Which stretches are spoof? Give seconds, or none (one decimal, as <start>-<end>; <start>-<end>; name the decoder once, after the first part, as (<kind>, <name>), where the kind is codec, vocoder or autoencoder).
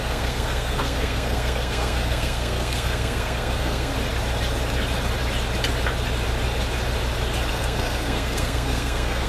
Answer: 0.0-3.9 (codec, SNAC); 7.5-9.3